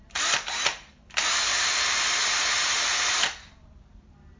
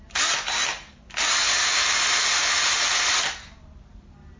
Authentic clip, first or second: second